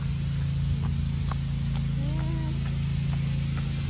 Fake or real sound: real